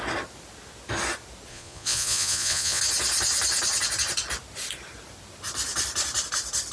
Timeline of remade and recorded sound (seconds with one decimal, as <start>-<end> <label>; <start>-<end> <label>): 0.0-1.5 recorded; 1.5-2.8 remade; 2.8-6.7 recorded